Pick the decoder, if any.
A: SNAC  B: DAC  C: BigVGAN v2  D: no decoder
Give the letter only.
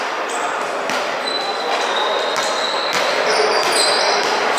D